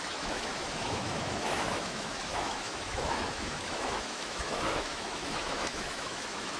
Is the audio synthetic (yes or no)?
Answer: yes